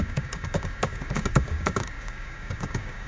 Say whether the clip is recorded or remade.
remade